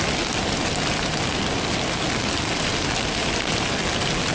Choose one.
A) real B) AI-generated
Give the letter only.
A